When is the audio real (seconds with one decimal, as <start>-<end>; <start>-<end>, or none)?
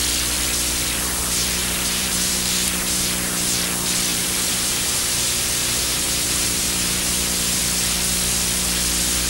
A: 0.0-1.6; 3.5-4.1; 7.6-9.3